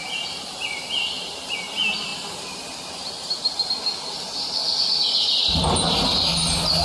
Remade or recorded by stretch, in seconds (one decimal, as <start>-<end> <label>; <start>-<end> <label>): 0.0-6.8 recorded

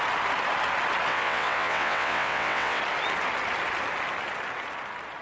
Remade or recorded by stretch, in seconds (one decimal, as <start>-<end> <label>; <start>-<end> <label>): 0.0-1.1 recorded; 1.1-2.8 remade; 2.8-5.2 recorded

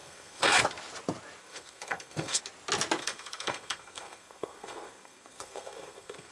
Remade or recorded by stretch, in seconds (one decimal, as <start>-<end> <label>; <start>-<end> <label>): 0.0-0.6 remade; 0.6-1.4 recorded; 1.4-2.4 remade; 2.4-3.0 recorded; 3.0-6.3 remade

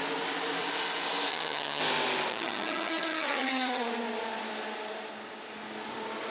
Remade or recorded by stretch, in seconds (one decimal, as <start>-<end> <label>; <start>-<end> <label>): 0.0-1.3 recorded; 1.3-1.8 remade; 1.8-2.3 recorded; 2.3-3.9 remade; 3.9-6.3 recorded

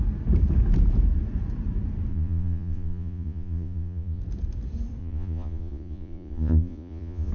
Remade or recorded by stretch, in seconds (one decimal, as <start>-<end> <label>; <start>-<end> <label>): 0.0-2.1 recorded; 2.1-4.2 remade; 4.2-5.0 recorded; 5.0-7.3 remade

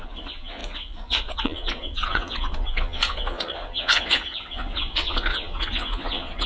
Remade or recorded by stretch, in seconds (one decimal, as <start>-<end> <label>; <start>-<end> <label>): 0.0-6.5 remade

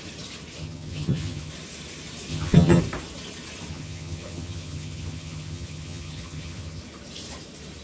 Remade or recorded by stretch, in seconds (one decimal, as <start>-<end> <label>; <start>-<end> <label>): 0.0-0.6 recorded; 0.6-1.5 remade; 1.5-2.3 recorded; 2.3-2.8 remade; 2.8-3.7 recorded; 3.7-6.8 remade; 6.8-7.8 recorded